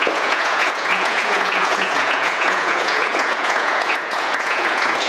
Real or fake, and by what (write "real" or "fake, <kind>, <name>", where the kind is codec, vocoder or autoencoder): fake, vocoder, Vocos